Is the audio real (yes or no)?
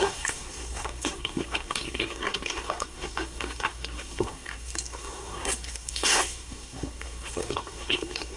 no